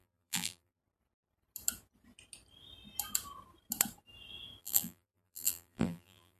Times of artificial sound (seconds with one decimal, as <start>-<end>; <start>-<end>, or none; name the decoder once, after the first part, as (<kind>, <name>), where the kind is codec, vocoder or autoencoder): 0.0-0.8 (vocoder, BigVGAN v2); 4.6-6.4